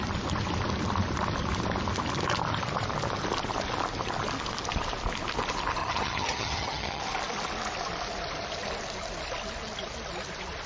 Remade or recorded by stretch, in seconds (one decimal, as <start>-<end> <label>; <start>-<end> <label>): 0.0-5.8 recorded; 5.8-7.0 remade; 7.0-10.7 recorded